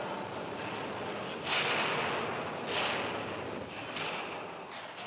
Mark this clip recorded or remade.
recorded